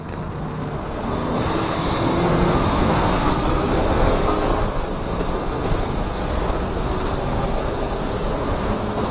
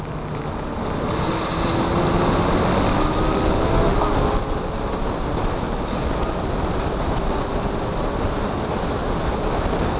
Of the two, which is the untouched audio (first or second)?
second